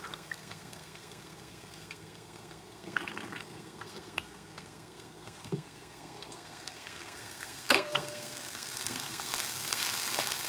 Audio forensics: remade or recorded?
remade